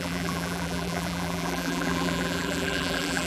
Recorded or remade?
remade